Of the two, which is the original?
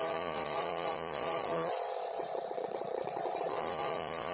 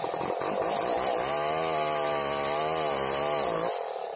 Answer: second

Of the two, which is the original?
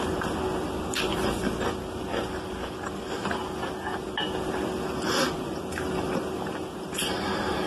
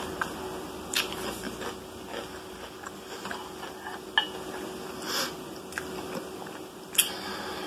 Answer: second